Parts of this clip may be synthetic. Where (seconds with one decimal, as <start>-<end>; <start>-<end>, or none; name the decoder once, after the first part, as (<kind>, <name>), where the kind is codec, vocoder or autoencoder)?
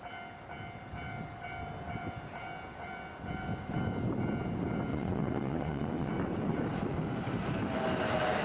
4.9-6.1 (vocoder, Vocos)